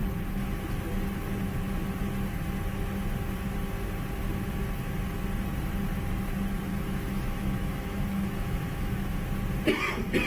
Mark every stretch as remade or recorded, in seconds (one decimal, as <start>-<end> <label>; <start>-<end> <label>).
0.0-6.7 recorded; 6.7-9.1 remade; 9.1-10.3 recorded